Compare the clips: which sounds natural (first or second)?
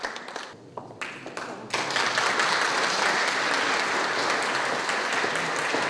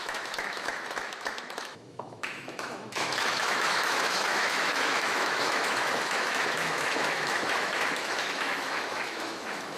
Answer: first